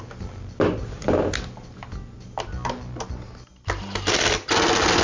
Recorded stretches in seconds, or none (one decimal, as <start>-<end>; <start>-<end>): 0.0-5.0